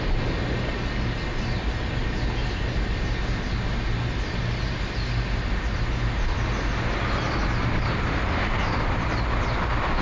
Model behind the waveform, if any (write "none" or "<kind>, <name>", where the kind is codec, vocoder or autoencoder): none